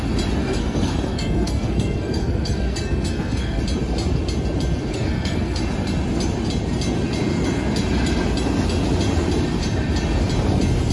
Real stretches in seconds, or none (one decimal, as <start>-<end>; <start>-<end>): 0.0-0.4; 3.6-4.9; 5.6-10.9